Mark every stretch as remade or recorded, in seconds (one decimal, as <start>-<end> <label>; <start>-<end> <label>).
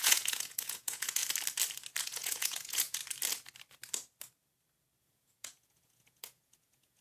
0.0-1.2 remade; 1.2-2.0 recorded; 2.0-3.0 remade; 3.0-5.0 recorded; 5.0-7.0 remade